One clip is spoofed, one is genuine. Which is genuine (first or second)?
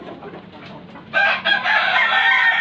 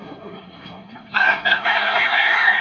first